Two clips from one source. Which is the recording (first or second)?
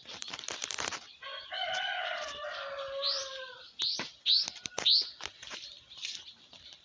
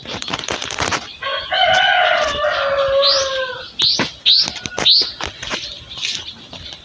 second